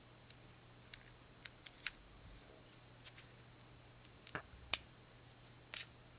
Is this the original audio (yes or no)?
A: yes